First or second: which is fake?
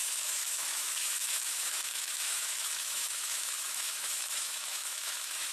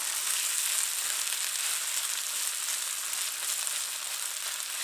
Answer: first